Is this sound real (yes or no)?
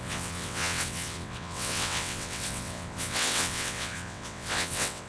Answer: no